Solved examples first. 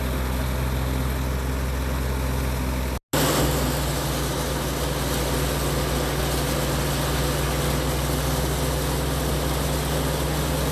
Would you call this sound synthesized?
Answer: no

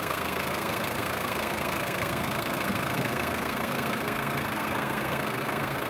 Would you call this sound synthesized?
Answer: yes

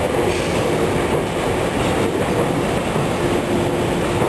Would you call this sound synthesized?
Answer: no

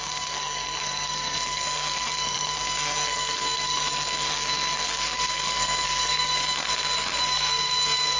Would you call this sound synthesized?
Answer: yes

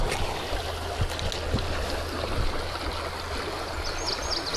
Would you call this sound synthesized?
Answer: no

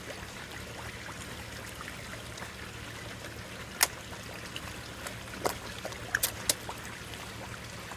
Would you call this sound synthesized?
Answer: no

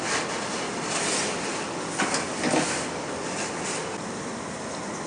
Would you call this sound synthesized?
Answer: no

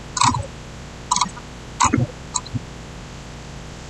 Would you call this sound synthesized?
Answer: no